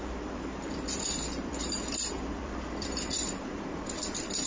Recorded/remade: remade